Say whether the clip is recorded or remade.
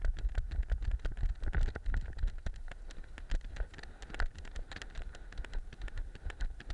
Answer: recorded